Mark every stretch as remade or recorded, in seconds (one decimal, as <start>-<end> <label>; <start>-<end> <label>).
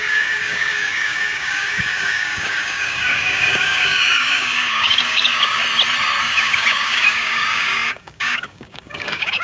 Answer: 0.0-5.6 remade; 5.6-6.2 recorded; 6.2-9.4 remade